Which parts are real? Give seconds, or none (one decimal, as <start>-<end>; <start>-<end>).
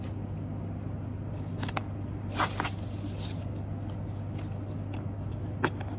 0.0-6.0